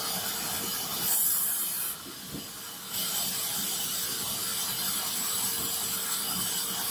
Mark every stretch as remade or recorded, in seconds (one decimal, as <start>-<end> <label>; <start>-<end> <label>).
0.0-0.9 recorded; 0.9-3.4 remade; 3.4-6.9 recorded